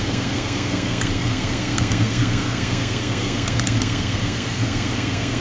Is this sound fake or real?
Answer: fake